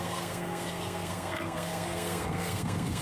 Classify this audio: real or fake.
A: fake